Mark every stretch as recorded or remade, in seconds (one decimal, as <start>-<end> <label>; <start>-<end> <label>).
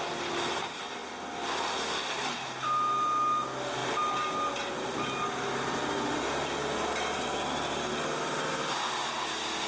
0.0-9.7 recorded